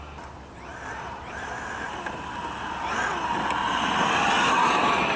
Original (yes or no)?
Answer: yes